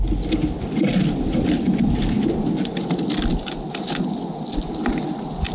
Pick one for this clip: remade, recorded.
recorded